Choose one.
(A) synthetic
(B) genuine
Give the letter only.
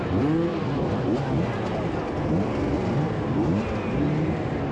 B